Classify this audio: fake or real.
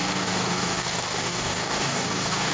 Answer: fake